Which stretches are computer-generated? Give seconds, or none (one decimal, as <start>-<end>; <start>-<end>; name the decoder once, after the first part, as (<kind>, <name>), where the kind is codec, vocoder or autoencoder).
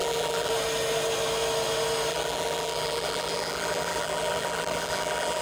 0.0-0.5 (vocoder, BigVGAN v2); 2.1-5.4